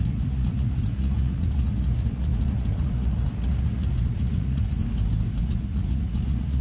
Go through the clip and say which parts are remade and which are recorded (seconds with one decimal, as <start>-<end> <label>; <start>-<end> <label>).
0.0-4.8 remade; 4.8-5.4 recorded; 5.4-6.6 remade